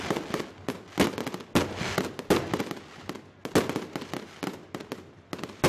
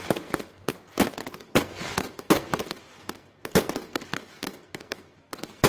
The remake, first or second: second